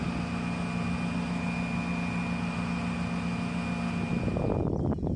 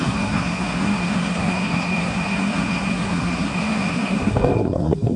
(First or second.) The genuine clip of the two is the first